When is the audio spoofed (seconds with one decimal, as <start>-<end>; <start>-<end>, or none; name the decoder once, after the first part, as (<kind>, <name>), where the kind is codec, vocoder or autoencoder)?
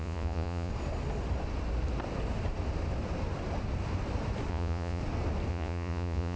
0.0-0.7 (vocoder, Vocos); 4.5-5.0; 5.5-6.4